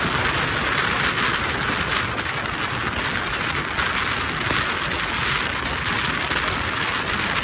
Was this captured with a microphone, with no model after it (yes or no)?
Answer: yes